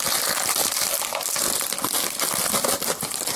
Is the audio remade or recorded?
recorded